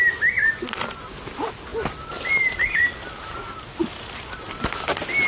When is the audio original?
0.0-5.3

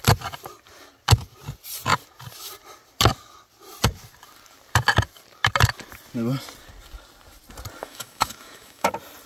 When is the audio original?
0.0-7.8; 8.9-9.3

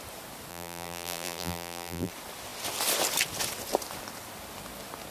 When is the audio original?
0.0-0.5; 2.1-5.1